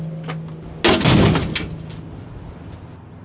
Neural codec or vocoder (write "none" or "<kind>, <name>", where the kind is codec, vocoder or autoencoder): none